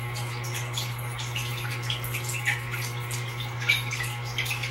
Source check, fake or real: fake